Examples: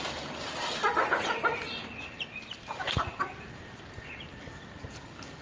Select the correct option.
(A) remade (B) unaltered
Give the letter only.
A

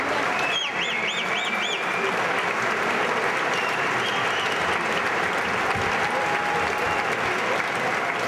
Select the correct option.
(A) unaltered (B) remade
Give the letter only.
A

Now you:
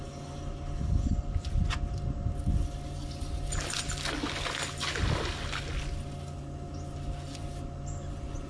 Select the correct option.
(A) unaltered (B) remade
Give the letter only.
A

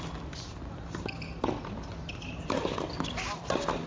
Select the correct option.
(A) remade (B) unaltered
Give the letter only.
B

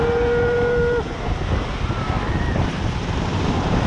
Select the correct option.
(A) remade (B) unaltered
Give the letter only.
B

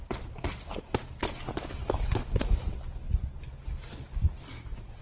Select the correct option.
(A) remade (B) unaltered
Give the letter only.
B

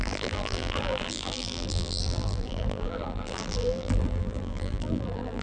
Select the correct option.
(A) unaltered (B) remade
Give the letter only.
B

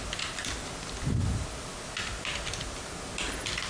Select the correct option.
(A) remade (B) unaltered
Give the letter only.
B